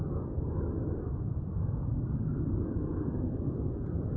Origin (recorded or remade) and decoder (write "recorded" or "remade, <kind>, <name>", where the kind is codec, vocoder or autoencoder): remade, vocoder, BigVGAN v2